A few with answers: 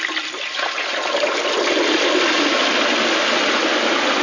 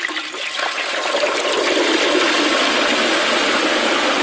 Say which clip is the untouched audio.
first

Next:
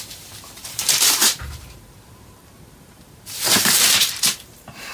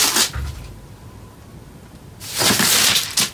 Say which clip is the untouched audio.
second